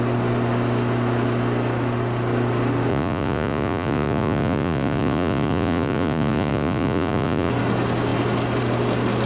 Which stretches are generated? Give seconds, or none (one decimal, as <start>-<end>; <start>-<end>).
2.9-7.5